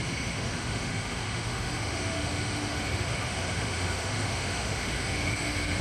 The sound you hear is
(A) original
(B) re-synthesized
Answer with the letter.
B